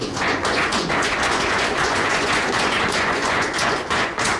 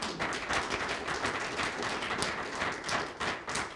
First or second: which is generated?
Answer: first